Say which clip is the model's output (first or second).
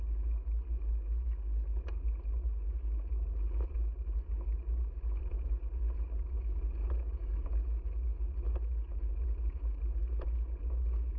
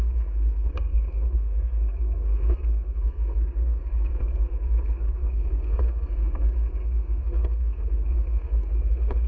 second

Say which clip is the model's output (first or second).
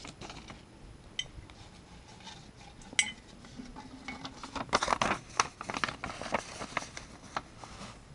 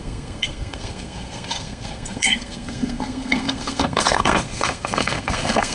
second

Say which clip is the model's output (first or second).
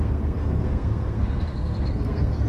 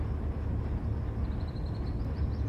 first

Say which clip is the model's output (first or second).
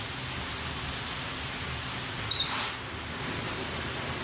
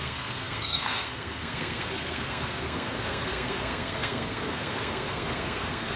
second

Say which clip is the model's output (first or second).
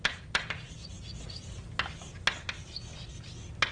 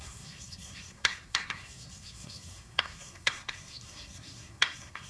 second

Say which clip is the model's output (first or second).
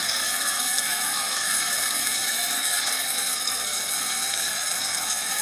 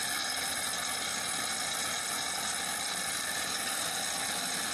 first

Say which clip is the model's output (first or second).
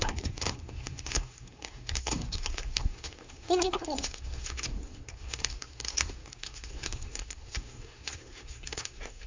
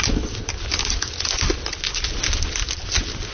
first